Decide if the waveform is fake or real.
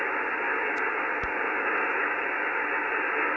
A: real